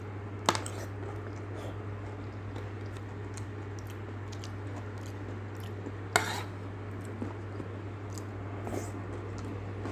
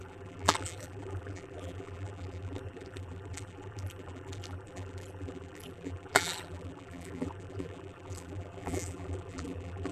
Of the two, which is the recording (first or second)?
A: first